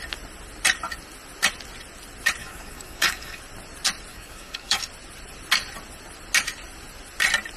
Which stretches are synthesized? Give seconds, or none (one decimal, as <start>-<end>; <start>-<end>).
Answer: 2.4-3.4; 4.1-4.8